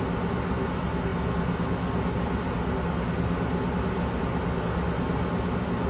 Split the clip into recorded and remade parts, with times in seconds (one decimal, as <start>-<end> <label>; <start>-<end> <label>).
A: 0.0-5.9 recorded